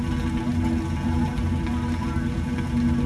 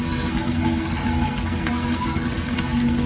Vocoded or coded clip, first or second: second